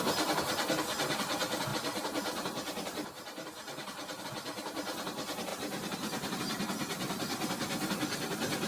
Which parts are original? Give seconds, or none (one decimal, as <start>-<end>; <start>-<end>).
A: 0.0-1.7; 4.2-5.5; 6.4-8.7